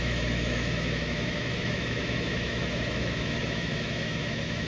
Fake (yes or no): yes